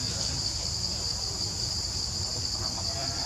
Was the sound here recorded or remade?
recorded